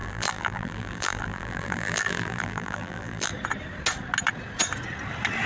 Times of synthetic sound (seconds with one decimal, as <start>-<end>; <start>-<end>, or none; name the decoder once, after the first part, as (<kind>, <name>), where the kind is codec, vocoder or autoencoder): 0.0-3.3 (vocoder, BigVGAN v2)